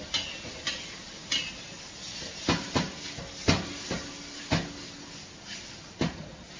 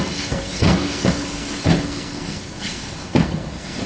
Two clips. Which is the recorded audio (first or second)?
first